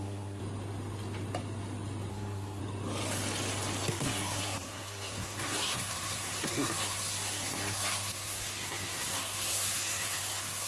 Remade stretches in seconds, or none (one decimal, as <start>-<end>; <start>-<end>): 0.0-0.4; 2.1-2.6; 3.9-10.7